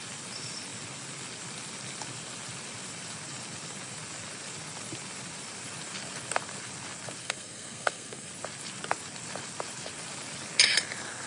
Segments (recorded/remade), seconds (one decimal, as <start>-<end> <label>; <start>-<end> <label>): 0.0-7.2 recorded; 7.2-8.3 remade; 8.3-11.3 recorded